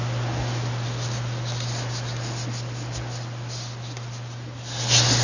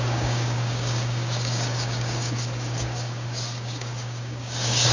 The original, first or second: first